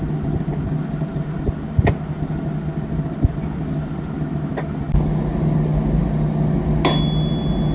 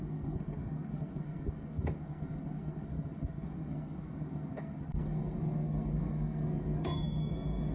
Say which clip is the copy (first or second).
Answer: second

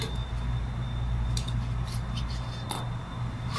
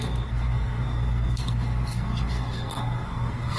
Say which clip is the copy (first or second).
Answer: second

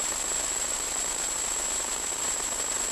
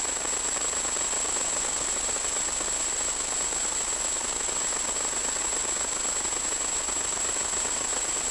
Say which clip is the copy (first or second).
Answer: first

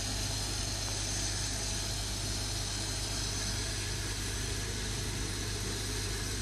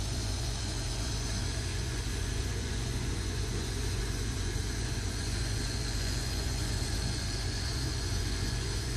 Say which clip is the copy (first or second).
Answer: second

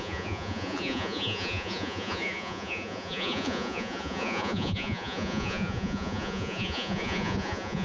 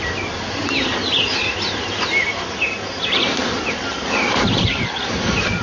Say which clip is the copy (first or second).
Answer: first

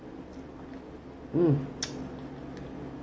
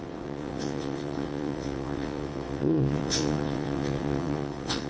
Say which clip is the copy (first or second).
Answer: second